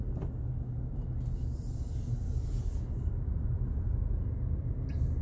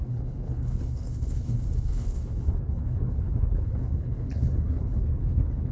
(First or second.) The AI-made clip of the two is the second